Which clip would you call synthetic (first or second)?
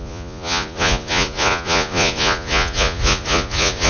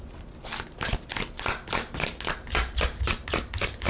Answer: first